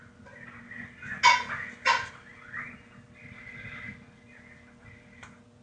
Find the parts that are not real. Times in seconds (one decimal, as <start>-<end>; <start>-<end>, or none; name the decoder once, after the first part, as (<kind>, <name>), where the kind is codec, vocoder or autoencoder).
none